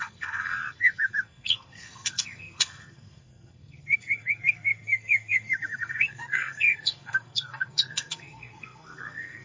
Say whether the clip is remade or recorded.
remade